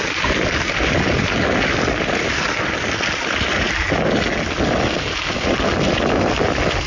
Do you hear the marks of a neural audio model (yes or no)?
no